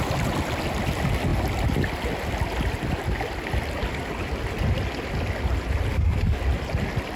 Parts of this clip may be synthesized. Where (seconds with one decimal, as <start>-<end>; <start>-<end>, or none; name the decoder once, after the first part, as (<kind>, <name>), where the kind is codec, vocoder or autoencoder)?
5.9-6.4 (codec, DAC)